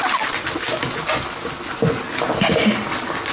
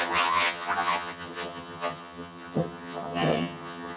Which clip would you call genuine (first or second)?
first